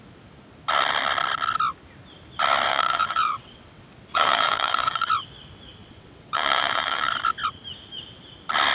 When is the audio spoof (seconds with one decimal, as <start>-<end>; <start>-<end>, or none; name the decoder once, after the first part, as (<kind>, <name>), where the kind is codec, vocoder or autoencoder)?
2.7-5.1 (vocoder, WaveNeXt); 5.8-7.1